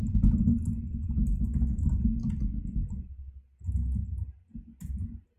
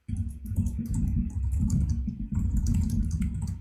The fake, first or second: second